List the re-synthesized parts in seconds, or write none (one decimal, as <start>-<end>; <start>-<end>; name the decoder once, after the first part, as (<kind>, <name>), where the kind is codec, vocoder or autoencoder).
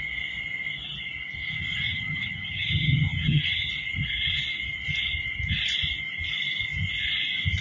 1.5-3.7 (vocoder, HiFi-GAN)